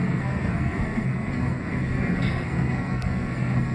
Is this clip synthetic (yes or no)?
yes